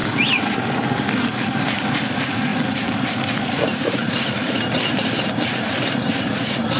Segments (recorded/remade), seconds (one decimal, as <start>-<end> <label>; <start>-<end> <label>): 0.0-0.7 remade; 0.7-2.5 recorded; 2.5-6.8 remade